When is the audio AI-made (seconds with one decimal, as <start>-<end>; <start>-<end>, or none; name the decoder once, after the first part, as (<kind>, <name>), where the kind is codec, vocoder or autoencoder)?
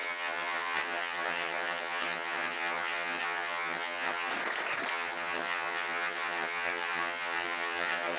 0.0-4.3 (vocoder, HiFi-GAN); 4.9-8.2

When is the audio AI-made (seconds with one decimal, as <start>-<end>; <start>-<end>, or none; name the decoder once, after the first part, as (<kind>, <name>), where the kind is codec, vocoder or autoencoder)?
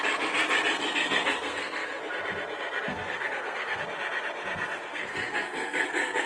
0.8-2.0 (codec, SNAC); 2.9-3.8; 4.9-6.3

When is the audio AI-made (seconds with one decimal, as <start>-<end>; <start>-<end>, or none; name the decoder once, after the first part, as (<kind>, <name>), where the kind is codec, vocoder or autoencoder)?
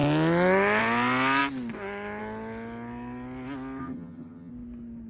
3.8-4.5 (vocoder, HiFi-GAN)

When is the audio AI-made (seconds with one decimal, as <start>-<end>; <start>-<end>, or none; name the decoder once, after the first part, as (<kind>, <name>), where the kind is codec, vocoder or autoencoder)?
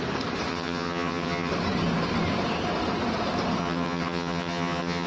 0.5-1.5 (vocoder, HiFi-GAN); 3.6-5.1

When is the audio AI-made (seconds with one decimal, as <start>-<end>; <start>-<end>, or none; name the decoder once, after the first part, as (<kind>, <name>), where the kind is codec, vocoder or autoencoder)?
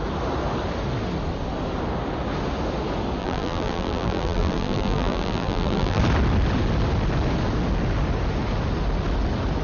3.2-6.0 (vocoder, BigVGAN v2)